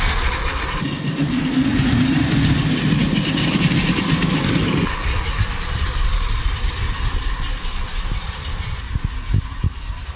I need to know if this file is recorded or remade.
recorded